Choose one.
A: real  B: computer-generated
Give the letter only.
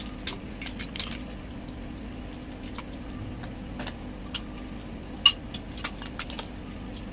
A